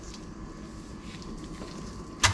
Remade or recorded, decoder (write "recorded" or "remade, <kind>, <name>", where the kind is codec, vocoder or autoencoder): recorded